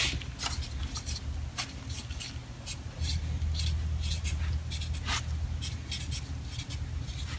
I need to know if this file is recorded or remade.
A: recorded